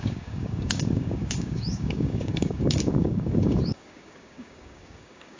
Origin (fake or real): fake